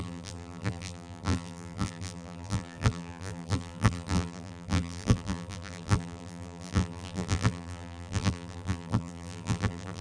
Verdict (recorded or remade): remade